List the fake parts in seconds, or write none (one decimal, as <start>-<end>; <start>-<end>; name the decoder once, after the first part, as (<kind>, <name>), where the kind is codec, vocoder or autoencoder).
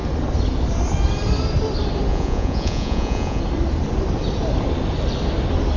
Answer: 2.1-3.4 (vocoder, Vocos)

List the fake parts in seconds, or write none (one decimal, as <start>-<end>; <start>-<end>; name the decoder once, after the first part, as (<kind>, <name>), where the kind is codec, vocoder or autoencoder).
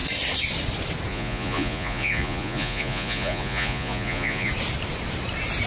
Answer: 1.1-4.5 (vocoder, Vocos)